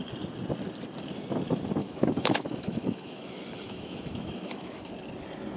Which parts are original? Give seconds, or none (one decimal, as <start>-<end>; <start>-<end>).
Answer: 0.0-1.8; 4.9-5.6